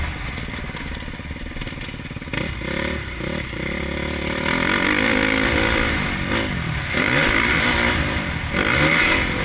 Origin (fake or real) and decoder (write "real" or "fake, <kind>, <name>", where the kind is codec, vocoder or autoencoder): real